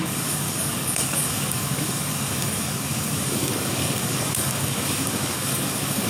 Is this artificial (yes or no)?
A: yes